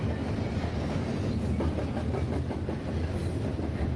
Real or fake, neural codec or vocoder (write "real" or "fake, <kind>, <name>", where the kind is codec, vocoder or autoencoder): real